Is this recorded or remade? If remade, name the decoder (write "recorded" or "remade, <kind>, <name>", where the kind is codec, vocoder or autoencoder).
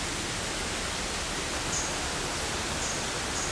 recorded